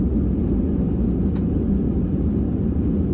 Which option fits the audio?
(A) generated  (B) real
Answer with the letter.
B